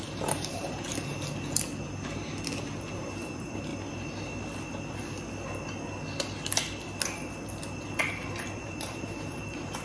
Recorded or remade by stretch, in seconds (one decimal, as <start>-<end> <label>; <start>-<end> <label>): 0.0-0.9 remade; 0.9-3.0 recorded; 3.0-3.7 remade; 3.7-8.6 recorded; 8.6-9.8 remade